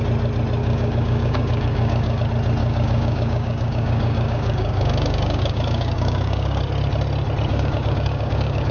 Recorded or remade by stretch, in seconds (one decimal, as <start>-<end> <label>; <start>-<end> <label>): 0.0-0.6 recorded; 0.6-2.2 remade; 2.2-2.6 recorded; 2.6-6.6 remade; 6.6-7.5 recorded; 7.5-8.7 remade